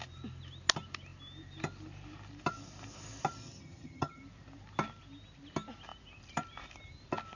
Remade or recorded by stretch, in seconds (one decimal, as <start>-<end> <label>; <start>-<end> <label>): 0.0-3.4 recorded; 3.4-4.2 remade; 4.2-7.4 recorded